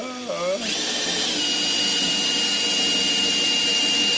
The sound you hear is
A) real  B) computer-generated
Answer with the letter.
A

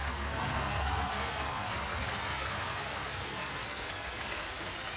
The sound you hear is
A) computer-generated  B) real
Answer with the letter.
A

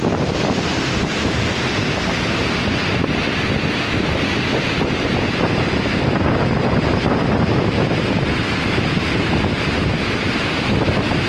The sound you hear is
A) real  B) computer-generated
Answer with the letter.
A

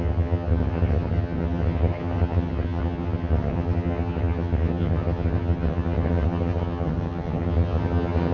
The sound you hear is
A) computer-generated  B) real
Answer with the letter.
A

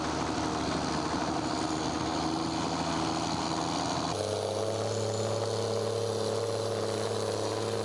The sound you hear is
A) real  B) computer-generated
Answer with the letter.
A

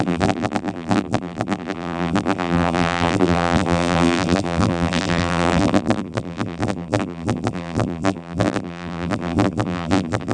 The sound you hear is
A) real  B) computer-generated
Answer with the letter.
B